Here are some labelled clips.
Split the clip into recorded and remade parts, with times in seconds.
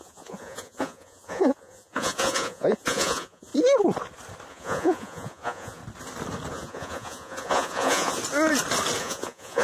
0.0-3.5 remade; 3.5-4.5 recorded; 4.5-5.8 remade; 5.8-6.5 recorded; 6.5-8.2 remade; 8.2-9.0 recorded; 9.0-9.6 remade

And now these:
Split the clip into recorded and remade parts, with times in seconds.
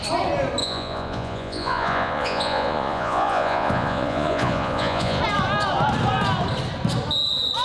0.0-0.6 recorded; 0.6-5.2 remade; 5.2-7.6 recorded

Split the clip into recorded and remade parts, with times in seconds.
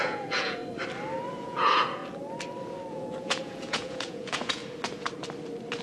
0.0-0.6 remade; 0.6-1.3 recorded; 1.3-2.0 remade; 2.0-2.9 recorded; 2.9-4.6 remade; 4.6-5.8 recorded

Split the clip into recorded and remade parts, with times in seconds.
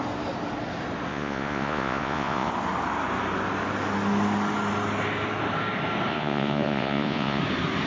0.0-1.1 recorded; 1.1-2.5 remade; 2.5-6.1 recorded; 6.1-7.4 remade; 7.4-7.9 recorded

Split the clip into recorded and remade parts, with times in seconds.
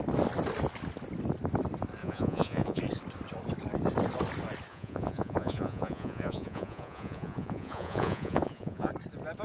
0.0-2.0 recorded; 2.0-2.8 remade; 2.8-4.7 recorded; 4.7-8.9 remade; 8.9-9.4 recorded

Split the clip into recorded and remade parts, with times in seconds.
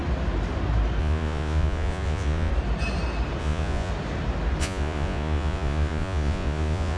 0.0-1.0 recorded; 1.0-2.5 remade; 2.5-3.4 recorded; 3.4-3.9 remade; 3.9-4.6 recorded; 4.6-7.0 remade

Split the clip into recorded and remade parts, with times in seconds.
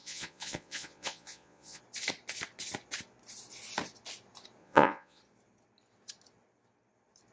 0.0-1.8 remade; 1.8-4.6 recorded; 4.6-5.2 remade; 5.2-7.3 recorded